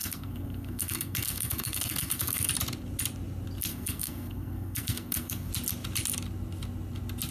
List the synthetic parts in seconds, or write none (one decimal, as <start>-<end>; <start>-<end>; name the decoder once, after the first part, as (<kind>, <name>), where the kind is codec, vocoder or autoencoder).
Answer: 0.0-2.5 (codec, SNAC); 3.7-5.5

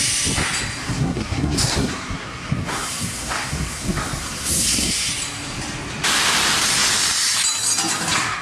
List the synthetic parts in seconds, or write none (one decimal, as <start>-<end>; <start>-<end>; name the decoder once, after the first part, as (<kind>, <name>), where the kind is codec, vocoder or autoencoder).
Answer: 0.8-5.1 (codec, SNAC)

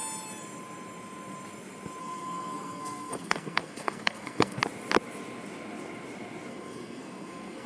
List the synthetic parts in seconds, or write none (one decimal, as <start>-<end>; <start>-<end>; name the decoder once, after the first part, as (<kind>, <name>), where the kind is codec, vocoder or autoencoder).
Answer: 2.0-4.6 (codec, SNAC); 6.5-7.7

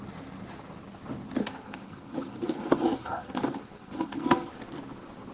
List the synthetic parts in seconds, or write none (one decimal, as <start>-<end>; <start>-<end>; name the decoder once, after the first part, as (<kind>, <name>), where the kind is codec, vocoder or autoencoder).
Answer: 1.4-4.6 (codec, SNAC)

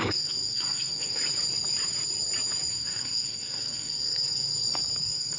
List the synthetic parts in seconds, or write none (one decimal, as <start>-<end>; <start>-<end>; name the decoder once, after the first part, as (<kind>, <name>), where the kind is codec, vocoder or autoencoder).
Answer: 0.0-1.2 (codec, SNAC); 2.7-4.5; 5.0-5.4